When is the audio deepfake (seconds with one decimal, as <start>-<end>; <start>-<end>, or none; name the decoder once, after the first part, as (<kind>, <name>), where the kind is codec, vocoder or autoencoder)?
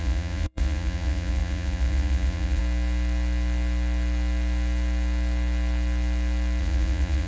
0.0-2.6 (vocoder, Vocos); 6.6-7.3